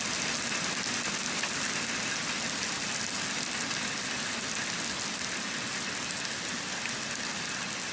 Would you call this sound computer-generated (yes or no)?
no